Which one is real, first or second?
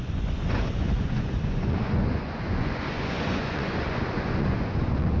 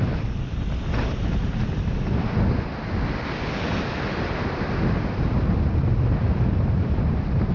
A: second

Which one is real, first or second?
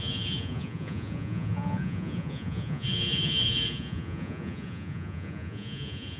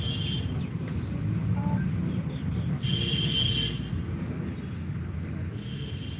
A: second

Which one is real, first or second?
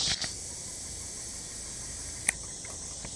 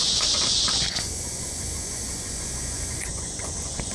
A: first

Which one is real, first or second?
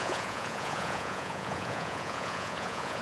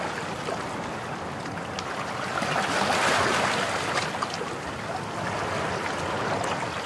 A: second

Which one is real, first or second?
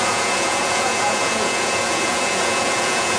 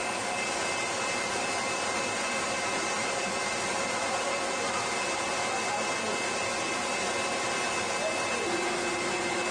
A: second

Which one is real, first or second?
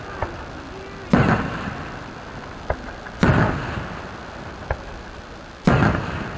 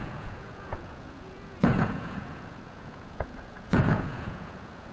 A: first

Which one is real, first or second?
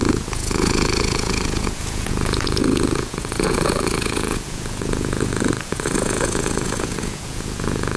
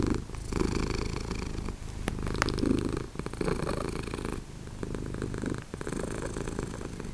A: second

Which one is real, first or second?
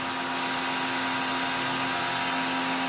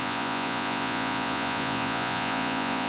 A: first